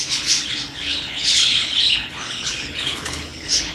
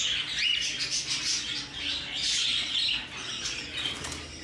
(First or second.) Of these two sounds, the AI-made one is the first